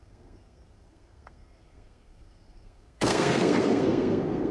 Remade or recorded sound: remade